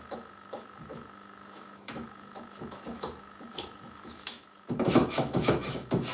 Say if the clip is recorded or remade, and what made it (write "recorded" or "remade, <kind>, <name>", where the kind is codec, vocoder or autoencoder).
remade, autoencoder, DAC-VAE